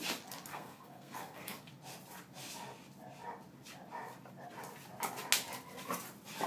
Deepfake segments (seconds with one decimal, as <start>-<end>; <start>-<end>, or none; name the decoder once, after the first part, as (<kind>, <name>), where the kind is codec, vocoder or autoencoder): 0.5-1.7 (codec, SNAC)